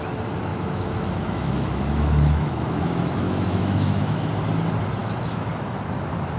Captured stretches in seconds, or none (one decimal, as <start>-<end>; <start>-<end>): 0.0-0.5; 4.3-5.0; 5.5-6.4